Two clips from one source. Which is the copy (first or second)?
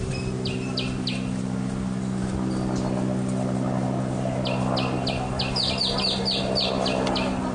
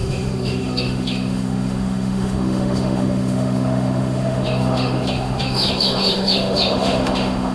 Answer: second